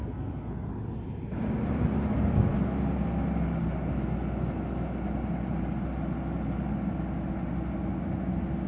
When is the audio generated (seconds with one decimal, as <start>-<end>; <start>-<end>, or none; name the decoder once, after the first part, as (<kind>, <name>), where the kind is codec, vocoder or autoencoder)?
0.0-0.7 (codec, SNAC)

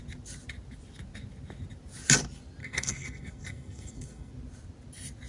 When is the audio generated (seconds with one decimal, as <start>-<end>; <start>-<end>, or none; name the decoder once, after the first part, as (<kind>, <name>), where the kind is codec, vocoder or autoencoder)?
2.6-4.3 (codec, SNAC)

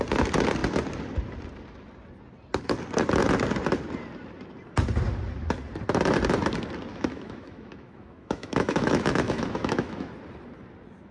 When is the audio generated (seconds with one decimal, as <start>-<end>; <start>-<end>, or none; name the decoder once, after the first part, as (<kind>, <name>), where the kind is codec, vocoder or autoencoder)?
6.9-10.1 (autoencoder, DAC-VAE)

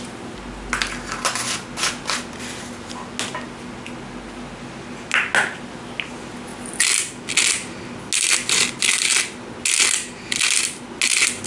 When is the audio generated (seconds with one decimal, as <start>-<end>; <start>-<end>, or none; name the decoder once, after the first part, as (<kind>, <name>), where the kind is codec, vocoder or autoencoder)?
none